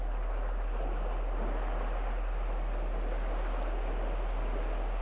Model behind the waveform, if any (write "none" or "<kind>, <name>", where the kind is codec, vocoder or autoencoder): none